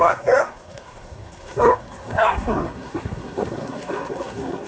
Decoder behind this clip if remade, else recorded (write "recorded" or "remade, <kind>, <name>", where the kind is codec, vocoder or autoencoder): remade, codec, SNAC